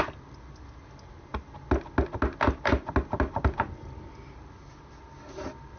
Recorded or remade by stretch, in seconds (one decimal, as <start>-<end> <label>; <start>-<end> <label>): 0.0-5.8 recorded